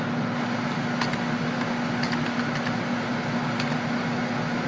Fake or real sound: real